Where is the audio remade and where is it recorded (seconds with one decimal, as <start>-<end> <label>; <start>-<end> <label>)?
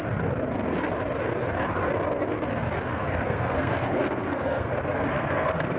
0.0-3.0 recorded; 3.0-5.8 remade